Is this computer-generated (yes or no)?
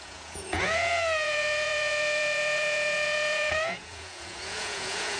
yes